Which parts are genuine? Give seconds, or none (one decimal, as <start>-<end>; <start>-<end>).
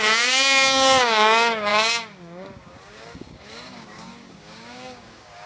none